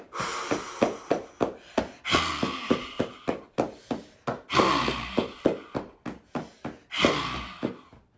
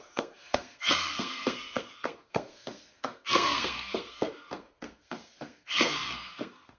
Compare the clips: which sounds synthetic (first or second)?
second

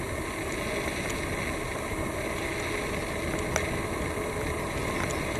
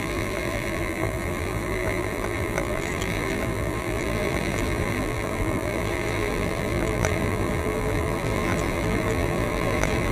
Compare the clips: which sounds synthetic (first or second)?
second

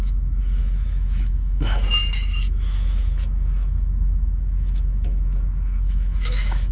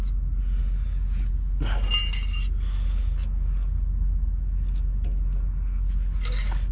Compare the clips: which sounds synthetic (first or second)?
first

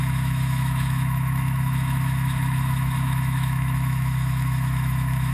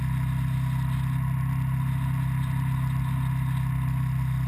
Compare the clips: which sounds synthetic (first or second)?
first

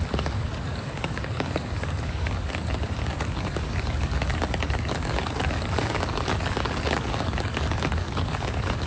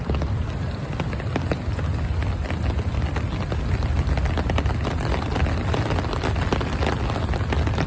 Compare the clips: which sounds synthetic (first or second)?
first